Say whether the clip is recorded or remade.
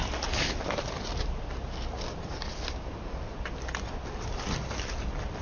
recorded